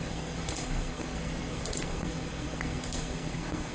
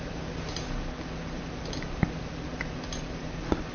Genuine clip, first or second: second